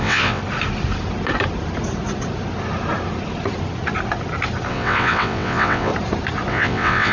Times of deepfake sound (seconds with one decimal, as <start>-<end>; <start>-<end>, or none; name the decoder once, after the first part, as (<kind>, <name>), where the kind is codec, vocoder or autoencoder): 0.0-0.4 (vocoder, WaveNeXt); 4.7-5.9; 6.5-7.1